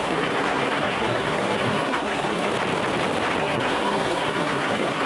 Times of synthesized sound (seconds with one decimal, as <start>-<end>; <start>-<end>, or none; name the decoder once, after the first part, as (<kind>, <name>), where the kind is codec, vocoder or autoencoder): 0.0-2.5 (codec, SNAC); 3.4-5.1